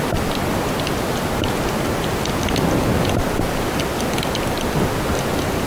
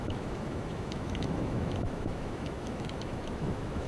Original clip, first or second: first